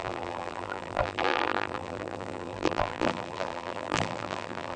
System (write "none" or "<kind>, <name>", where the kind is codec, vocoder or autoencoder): vocoder, BigVGAN v2